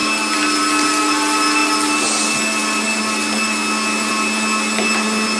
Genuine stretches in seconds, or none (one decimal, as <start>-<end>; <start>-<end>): 0.0-5.4